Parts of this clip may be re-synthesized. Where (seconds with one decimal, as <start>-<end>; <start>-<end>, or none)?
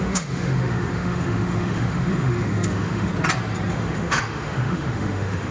0.0-3.1; 3.7-5.5